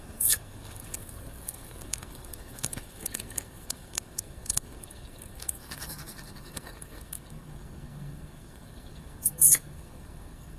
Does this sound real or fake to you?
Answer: fake